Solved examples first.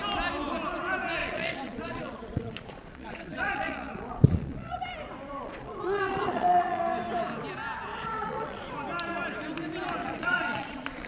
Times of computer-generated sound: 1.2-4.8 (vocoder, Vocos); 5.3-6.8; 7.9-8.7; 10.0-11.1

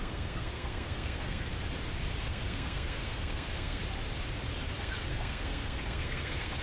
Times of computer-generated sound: 0.0-1.5 (codec, SNAC); 2.2-3.8; 4.8-6.6

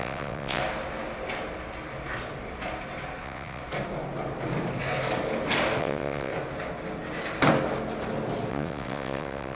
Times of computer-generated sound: 0.0-0.6 (vocoder, WaveNeXt); 3.2-3.6; 5.8-6.3; 8.5-9.6

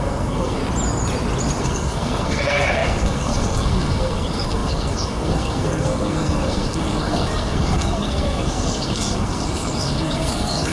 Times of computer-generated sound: 0.0-0.6 (codec, SNAC); 1.6-10.7